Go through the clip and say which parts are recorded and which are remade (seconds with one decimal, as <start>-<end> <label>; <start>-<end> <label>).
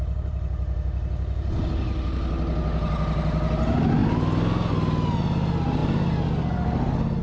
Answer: 0.0-7.2 recorded